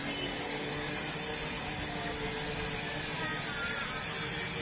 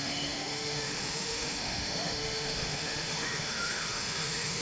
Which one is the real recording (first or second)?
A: first